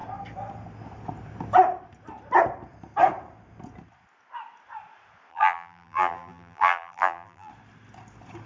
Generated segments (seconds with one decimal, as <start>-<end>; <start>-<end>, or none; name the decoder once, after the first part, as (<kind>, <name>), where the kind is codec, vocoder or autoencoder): 5.3-7.5 (vocoder, BigVGAN v2)